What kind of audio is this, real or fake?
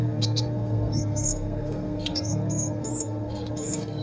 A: fake